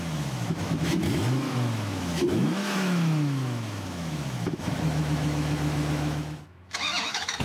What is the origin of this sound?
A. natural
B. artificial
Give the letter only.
B